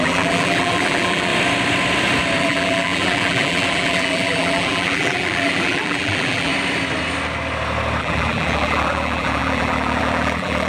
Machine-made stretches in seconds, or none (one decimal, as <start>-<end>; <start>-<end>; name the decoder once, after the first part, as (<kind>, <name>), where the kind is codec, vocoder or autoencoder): 0.0-1.3 (vocoder, BigVGAN v2); 2.4-6.5; 8.0-10.7